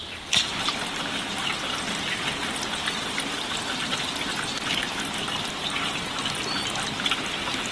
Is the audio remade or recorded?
recorded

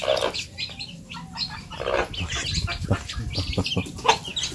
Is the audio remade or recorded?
recorded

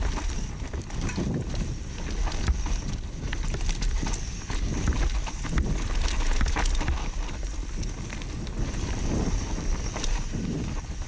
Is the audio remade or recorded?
recorded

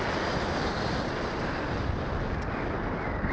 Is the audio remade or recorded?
recorded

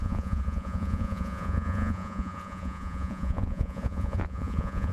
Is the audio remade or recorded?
remade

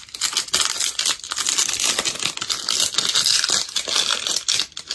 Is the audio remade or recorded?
recorded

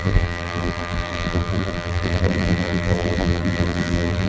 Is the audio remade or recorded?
remade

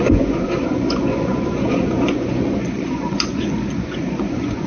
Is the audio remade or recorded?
remade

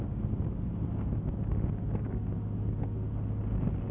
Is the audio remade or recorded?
recorded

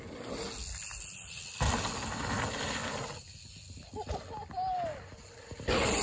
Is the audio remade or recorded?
recorded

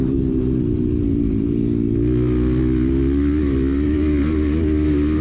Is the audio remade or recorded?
recorded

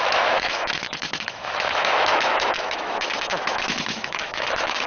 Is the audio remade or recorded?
remade